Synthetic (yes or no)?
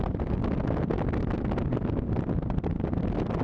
no